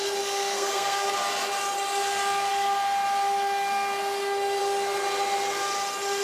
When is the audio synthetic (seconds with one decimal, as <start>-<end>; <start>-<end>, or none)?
0.0-1.1